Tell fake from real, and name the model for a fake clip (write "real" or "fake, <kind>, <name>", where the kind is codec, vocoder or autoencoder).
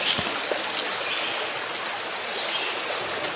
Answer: real